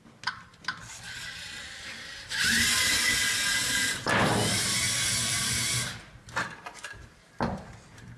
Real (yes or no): yes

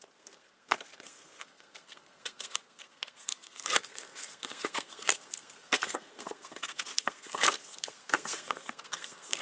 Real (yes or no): no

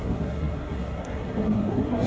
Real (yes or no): no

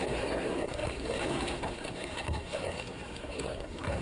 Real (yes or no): no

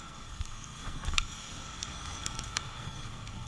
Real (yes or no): no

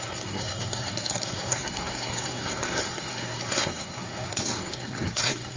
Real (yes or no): no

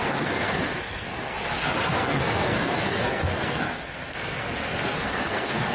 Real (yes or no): no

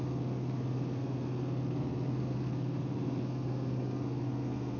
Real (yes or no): no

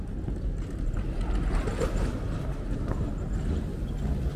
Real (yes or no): yes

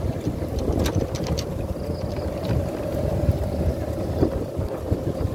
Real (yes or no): yes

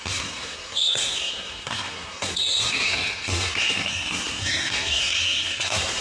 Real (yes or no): no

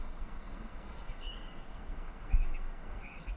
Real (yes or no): no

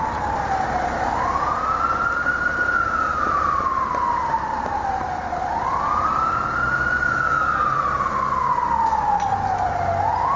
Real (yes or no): yes